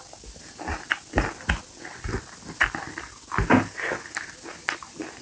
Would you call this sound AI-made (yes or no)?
no